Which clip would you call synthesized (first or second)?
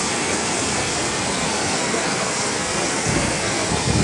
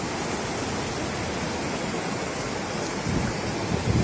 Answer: first